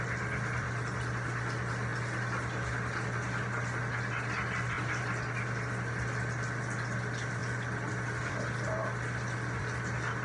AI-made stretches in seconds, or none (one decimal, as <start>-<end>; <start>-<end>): none